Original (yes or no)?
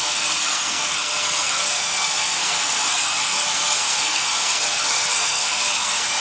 no